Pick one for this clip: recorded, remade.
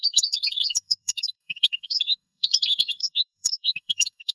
remade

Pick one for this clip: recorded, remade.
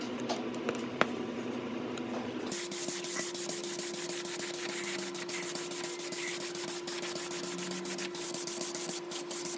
recorded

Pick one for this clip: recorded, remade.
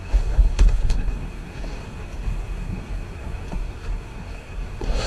remade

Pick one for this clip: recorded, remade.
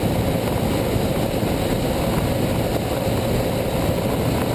recorded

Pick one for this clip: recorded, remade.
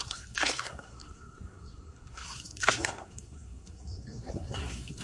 remade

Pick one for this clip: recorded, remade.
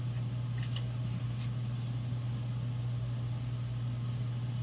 recorded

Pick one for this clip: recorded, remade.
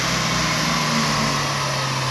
recorded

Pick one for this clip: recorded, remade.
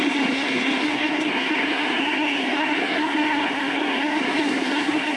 remade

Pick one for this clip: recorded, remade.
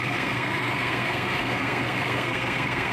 remade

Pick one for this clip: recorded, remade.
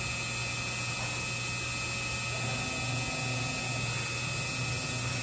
recorded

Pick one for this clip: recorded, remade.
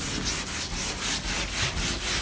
recorded